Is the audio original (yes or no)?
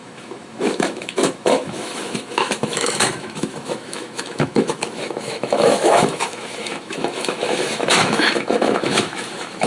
no